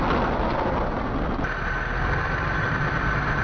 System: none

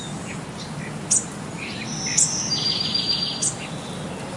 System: none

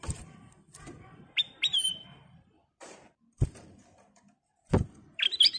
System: vocoder, BigVGAN v2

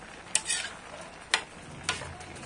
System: none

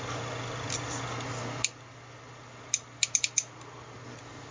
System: none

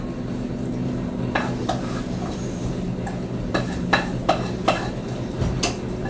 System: none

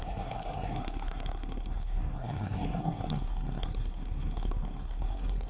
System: codec, SNAC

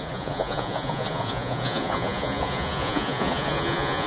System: vocoder, Vocos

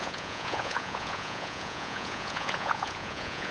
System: vocoder, Vocos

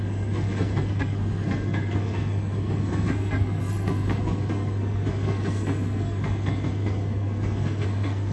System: codec, SNAC